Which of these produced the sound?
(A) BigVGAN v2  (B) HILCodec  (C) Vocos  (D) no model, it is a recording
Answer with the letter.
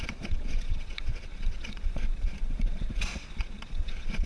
C